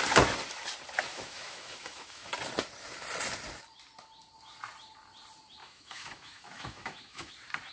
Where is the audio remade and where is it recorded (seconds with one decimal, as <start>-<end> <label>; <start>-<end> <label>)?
0.0-1.1 recorded; 1.1-2.3 remade; 2.3-5.6 recorded; 5.6-7.3 remade; 7.3-7.7 recorded